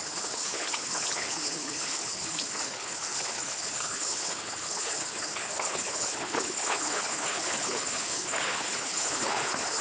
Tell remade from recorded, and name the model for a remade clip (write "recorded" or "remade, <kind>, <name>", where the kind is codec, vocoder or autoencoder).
remade, codec, HILCodec